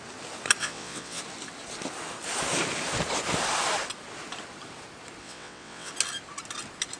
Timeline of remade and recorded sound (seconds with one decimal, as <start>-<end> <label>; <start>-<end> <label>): 0.0-0.6 recorded; 0.6-1.2 remade; 1.2-5.2 recorded; 5.2-5.9 remade; 5.9-7.0 recorded

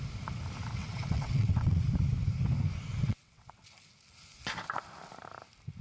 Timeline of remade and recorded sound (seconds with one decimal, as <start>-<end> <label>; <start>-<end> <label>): 0.0-0.8 recorded; 0.8-1.8 remade; 1.8-3.0 recorded; 3.0-3.5 remade; 3.5-5.8 recorded